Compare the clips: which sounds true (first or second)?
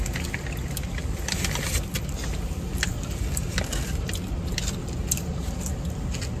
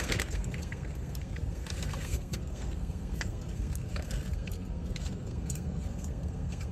first